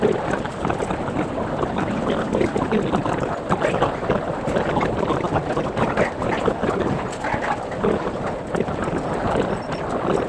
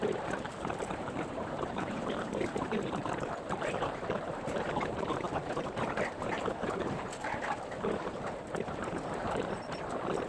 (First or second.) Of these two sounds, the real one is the first